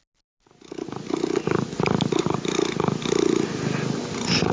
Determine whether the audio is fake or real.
real